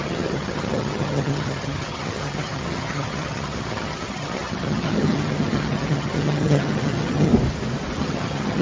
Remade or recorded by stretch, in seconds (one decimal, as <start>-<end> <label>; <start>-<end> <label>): 0.0-7.3 remade; 7.3-8.0 recorded; 8.0-8.6 remade